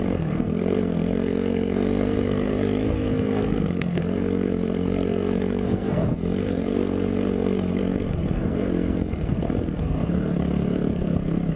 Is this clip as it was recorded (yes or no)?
no